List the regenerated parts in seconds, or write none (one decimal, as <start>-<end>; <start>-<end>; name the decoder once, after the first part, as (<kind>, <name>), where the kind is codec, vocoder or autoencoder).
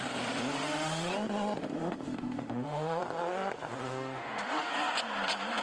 0.5-1.1 (autoencoder, DAC-VAE); 1.6-3.0; 3.7-4.7